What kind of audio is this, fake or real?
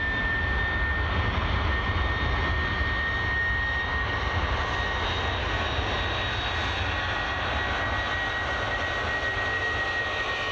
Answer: real